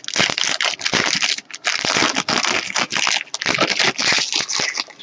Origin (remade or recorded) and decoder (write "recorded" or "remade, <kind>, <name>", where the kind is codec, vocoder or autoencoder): recorded